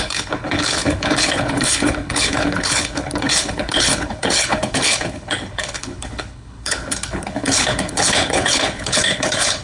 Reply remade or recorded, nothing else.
remade